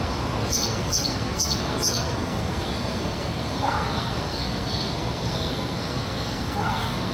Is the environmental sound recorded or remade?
remade